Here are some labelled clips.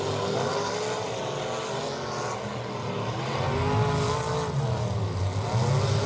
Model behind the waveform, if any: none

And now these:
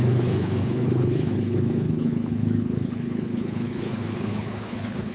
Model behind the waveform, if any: codec, HILCodec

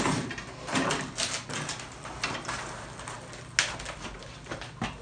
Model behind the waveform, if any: none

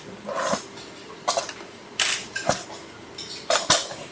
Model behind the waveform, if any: none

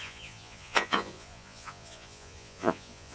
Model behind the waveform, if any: vocoder, Vocos